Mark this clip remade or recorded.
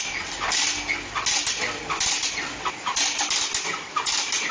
recorded